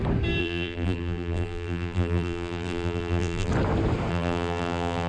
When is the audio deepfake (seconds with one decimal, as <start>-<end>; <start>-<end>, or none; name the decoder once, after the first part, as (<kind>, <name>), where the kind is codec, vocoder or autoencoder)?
0.4-3.5 (vocoder, BigVGAN v2); 4.1-5.1